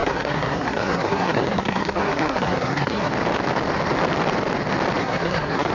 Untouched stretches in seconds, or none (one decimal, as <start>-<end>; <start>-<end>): 3.1-5.0